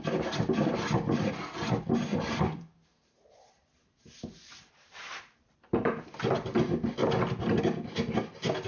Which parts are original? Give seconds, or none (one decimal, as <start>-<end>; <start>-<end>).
0.0-2.1; 6.3-7.0; 7.6-8.7